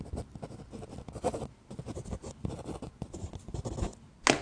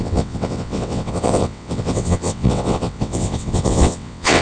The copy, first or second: second